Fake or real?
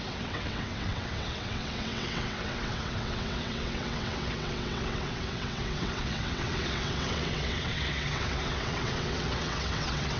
fake